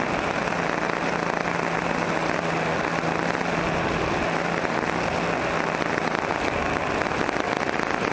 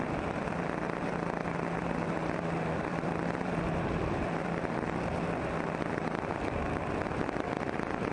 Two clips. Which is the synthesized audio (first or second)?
second